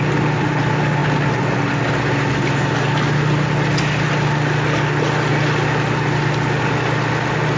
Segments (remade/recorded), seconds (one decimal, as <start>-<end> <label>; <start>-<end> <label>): 0.0-7.6 recorded

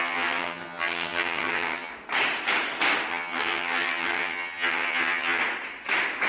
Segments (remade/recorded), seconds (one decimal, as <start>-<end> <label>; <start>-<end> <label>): 0.0-1.9 remade; 1.9-3.1 recorded; 3.1-5.4 remade; 5.4-6.3 recorded

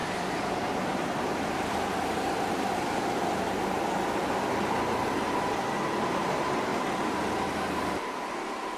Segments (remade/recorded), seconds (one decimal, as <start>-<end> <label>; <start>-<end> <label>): 0.0-3.2 remade; 3.2-8.8 recorded

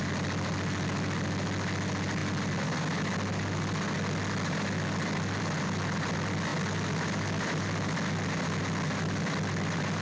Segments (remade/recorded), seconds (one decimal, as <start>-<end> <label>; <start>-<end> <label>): 0.0-10.0 recorded

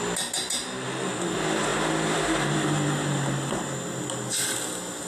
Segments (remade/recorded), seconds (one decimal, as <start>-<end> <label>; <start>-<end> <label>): 0.0-5.1 recorded

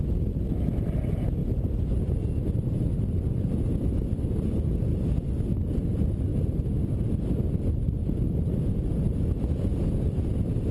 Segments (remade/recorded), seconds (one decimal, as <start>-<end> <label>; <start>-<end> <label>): 0.0-10.7 recorded